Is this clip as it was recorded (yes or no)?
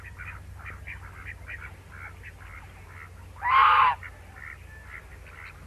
yes